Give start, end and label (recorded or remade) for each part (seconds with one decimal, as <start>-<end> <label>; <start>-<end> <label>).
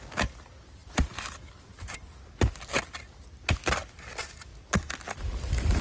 0.0-5.8 recorded